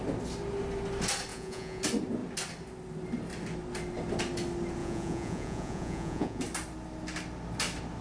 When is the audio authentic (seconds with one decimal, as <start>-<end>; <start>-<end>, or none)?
0.0-1.3; 1.8-4.8; 6.4-8.0